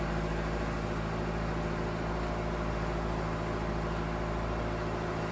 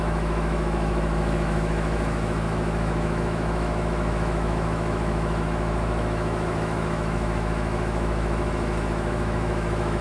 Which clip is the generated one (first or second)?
second